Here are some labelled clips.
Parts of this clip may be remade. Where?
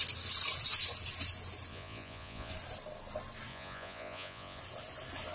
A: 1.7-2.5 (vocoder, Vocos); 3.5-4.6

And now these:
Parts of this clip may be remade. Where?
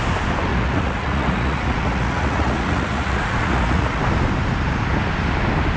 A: 0.5-4.0 (vocoder, Vocos)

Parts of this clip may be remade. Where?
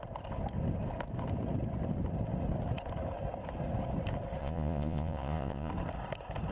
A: 4.4-5.7 (vocoder, Vocos)